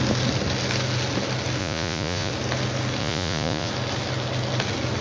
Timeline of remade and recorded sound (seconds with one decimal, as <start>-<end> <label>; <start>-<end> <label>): 0.0-1.6 recorded; 1.6-2.3 remade; 2.3-3.0 recorded; 3.0-3.7 remade; 3.7-5.0 recorded